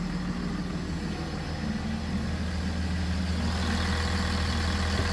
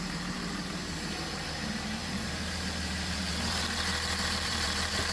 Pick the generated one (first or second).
second